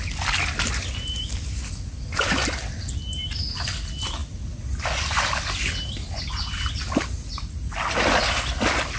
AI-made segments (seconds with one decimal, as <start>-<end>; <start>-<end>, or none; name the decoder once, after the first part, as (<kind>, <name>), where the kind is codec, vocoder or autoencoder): none